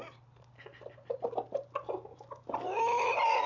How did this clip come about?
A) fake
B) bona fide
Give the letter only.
B